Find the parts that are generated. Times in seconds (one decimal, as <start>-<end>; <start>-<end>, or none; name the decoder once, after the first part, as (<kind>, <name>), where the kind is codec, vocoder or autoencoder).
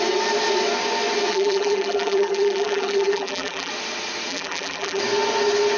1.3-3.7 (vocoder, BigVGAN v2); 4.3-5.0